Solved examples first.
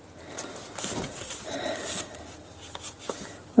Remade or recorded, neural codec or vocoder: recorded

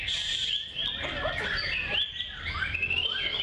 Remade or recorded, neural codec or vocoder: remade, vocoder, BigVGAN v2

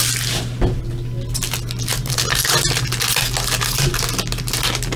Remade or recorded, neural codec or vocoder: recorded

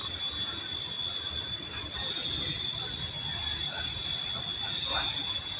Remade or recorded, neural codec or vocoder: recorded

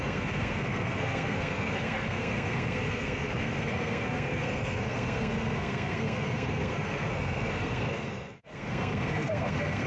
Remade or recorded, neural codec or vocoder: remade, codec, SNAC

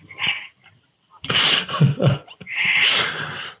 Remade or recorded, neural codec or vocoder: recorded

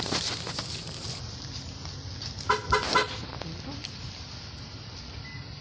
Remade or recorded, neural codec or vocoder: recorded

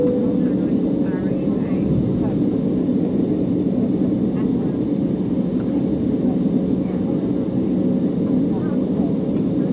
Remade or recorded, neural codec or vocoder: recorded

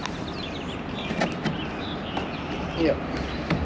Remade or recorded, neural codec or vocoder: recorded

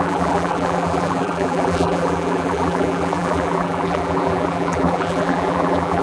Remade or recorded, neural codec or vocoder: remade, vocoder, BigVGAN v2